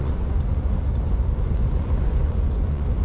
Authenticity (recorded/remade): remade